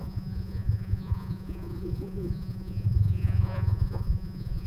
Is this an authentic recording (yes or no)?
no